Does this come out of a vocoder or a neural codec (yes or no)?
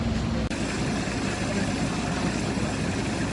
no